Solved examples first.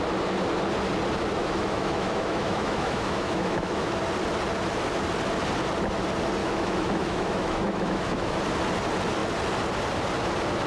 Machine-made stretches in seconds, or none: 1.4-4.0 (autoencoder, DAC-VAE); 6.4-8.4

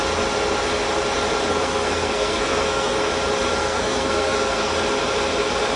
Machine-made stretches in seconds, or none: 1.5-3.1 (codec, SNAC); 3.6-4.7

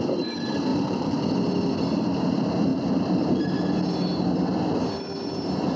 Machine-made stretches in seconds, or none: 0.7-1.3 (vocoder, BigVGAN v2); 2.7-3.7

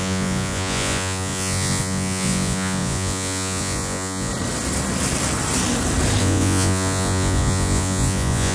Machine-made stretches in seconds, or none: 0.0-4.3 (vocoder, Vocos); 6.2-8.5

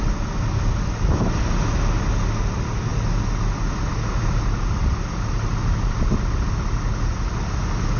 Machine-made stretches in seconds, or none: none